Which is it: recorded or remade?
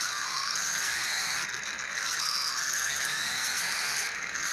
remade